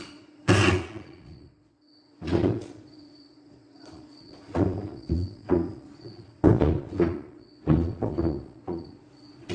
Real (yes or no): no